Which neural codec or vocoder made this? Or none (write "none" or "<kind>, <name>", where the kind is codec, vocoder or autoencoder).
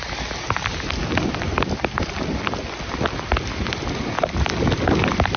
none